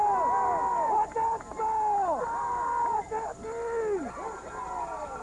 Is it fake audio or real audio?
real